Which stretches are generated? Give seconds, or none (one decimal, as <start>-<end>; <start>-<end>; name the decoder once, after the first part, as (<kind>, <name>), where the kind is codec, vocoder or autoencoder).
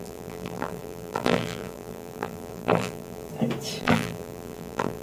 0.0-3.3 (vocoder, BigVGAN v2); 3.8-5.0